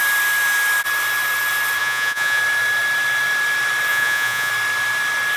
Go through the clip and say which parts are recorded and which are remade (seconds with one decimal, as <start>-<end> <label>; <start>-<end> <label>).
0.0-1.8 recorded; 1.8-2.4 remade; 2.4-3.9 recorded; 3.9-4.5 remade; 4.5-5.4 recorded